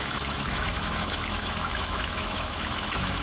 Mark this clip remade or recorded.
remade